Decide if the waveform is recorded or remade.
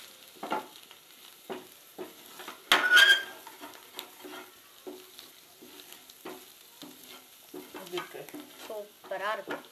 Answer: recorded